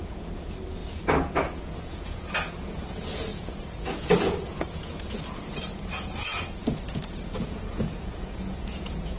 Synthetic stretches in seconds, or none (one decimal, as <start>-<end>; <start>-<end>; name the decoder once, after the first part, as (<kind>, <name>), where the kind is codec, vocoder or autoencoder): 0.0-9.2 (vocoder, Vocos)

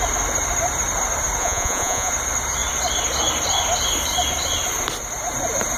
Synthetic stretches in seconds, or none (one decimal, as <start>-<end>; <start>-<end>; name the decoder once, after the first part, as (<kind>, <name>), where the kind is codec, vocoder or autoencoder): 1.4-2.1 (vocoder, Vocos)